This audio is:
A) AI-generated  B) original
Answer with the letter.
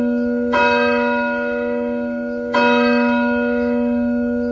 A